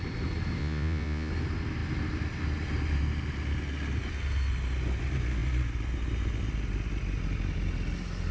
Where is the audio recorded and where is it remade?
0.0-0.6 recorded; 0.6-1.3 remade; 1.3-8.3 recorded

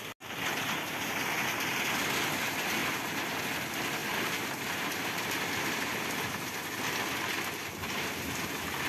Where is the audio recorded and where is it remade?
0.0-2.8 recorded; 2.8-3.4 remade; 3.4-4.0 recorded; 4.0-6.6 remade; 6.6-7.8 recorded; 7.8-8.9 remade